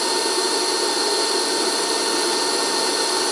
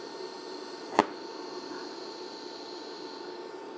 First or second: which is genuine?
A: second